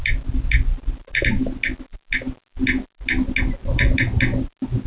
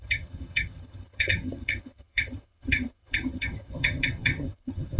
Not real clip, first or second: second